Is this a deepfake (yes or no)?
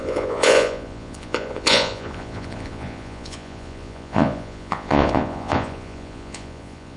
yes